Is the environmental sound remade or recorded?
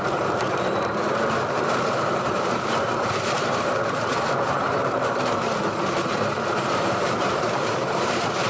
remade